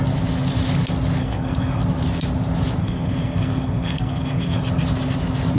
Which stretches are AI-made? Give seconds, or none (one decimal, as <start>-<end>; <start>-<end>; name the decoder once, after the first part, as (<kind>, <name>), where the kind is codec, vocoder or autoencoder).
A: 1.2-1.8 (codec, SNAC); 2.8-4.6